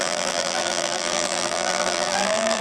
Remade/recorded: remade